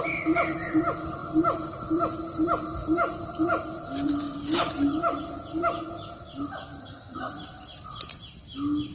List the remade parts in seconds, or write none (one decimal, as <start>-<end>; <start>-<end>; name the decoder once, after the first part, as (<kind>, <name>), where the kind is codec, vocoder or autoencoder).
6.8-7.3 (vocoder, HiFi-GAN)